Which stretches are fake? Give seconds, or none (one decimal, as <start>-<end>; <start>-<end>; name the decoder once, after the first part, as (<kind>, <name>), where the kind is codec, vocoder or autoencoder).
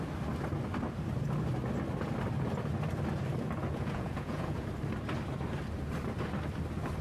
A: 3.6-4.6 (vocoder, Vocos)